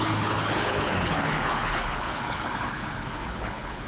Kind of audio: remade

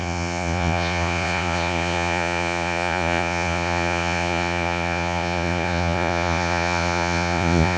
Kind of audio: remade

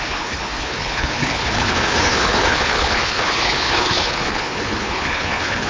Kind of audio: remade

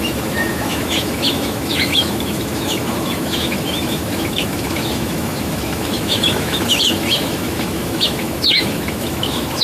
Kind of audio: remade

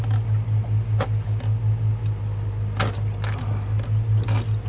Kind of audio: recorded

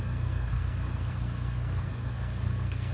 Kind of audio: remade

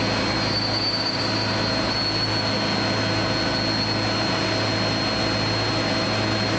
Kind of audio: recorded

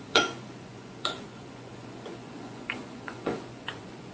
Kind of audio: remade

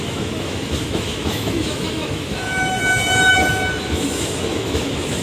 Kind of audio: remade